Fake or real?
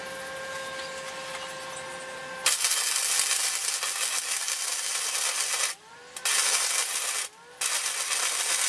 real